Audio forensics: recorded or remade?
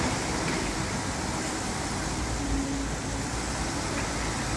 recorded